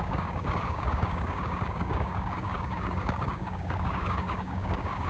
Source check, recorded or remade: remade